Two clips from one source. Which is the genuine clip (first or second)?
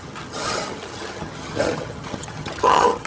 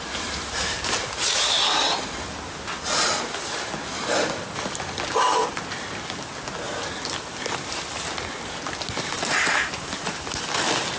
second